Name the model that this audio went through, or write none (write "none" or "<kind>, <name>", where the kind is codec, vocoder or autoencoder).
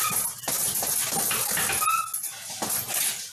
none